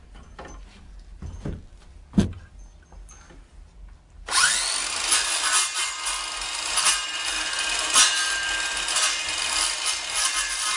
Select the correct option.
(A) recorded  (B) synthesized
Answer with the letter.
A